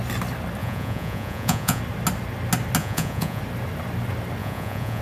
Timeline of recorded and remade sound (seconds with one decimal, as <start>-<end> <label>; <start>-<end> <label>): 0.0-0.6 recorded; 0.6-1.8 remade; 1.8-2.8 recorded; 2.8-3.4 remade; 3.4-4.4 recorded; 4.4-5.0 remade